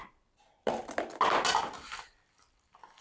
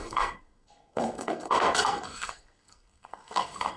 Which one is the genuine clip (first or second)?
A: first